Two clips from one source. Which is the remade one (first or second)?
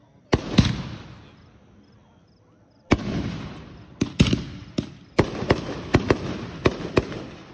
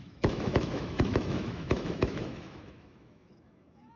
second